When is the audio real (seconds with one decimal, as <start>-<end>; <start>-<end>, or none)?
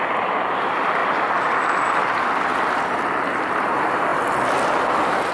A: 0.0-5.3